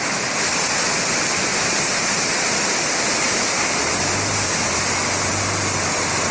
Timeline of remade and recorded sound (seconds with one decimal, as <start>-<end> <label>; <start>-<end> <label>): 0.0-6.3 recorded